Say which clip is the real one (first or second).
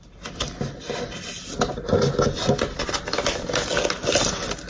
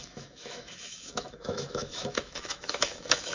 first